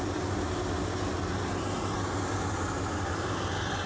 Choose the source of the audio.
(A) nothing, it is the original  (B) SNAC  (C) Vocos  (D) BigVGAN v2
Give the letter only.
A